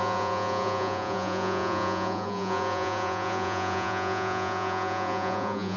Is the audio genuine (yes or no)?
no